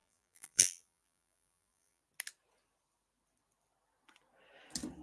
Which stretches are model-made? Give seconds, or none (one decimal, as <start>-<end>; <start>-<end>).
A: 0.0-2.0